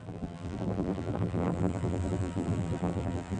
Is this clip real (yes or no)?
no